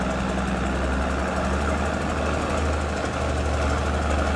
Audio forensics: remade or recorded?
recorded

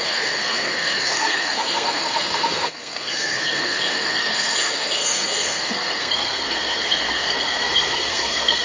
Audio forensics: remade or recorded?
remade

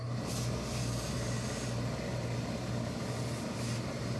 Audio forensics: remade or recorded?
recorded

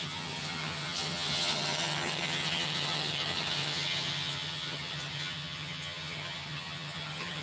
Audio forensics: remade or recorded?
remade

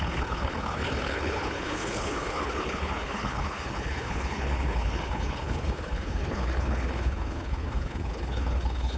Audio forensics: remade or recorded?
remade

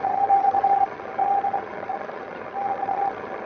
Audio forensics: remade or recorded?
remade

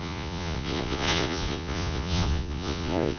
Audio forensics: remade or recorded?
remade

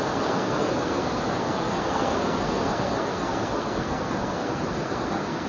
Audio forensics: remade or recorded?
remade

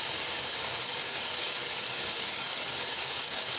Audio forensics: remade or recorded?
remade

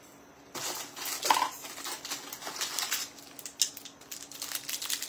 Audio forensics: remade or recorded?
recorded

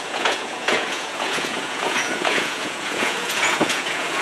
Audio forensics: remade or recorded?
remade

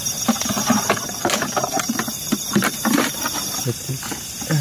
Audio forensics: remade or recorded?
remade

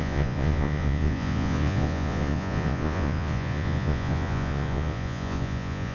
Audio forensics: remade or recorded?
remade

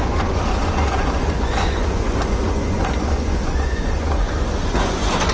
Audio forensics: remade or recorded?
remade